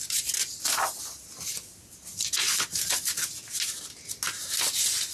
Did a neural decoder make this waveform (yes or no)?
no